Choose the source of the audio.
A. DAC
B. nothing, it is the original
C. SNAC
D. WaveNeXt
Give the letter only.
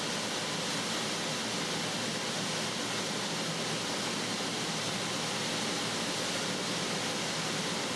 B